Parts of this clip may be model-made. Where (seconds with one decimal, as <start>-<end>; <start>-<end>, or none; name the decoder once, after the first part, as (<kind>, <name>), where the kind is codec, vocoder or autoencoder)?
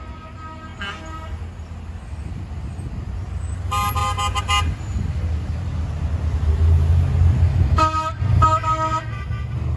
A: 7.5-8.2 (autoencoder, DAC-VAE)